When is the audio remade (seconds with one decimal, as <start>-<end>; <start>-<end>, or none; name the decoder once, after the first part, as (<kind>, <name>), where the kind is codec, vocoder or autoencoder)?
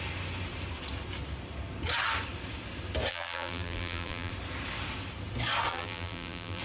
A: 3.1-4.3 (vocoder, BigVGAN v2); 5.7-6.6